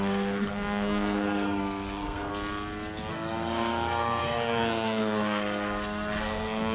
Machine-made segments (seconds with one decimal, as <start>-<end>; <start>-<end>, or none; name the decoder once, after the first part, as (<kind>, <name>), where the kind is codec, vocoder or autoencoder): 0.0-2.3 (codec, SNAC); 3.1-6.7